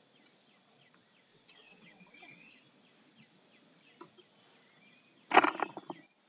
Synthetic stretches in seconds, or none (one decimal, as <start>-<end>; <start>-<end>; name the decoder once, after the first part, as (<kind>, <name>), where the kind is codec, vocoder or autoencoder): 1.3-2.5 (vocoder, WaveNeXt)